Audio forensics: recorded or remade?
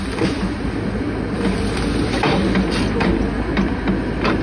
recorded